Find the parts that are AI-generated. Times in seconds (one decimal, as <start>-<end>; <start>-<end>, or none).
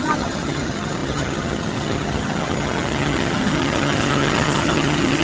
0.0-5.2